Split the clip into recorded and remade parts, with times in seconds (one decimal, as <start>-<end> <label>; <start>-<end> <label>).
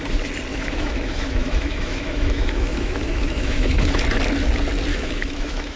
0.0-0.5 recorded; 0.5-4.0 remade; 4.0-4.9 recorded; 4.9-5.8 remade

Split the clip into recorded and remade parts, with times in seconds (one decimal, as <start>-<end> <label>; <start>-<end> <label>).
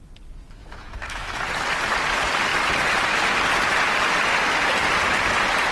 0.0-0.6 recorded; 0.6-1.4 remade; 1.4-5.7 recorded